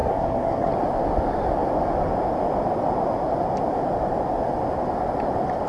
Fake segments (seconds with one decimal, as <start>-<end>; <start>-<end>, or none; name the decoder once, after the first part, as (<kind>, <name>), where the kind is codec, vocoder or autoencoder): 0.0-0.7 (codec, SNAC)